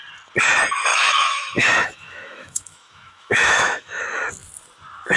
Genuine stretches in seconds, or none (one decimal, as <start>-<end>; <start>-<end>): 0.0-0.9; 4.0-5.2